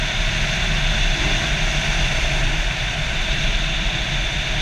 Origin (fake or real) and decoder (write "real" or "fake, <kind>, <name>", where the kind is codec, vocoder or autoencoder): real